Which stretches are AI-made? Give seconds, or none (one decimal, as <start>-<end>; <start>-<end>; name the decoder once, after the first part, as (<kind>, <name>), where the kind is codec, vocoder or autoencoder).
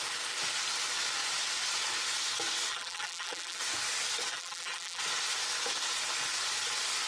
2.7-3.6 (vocoder, BigVGAN v2); 4.3-5.0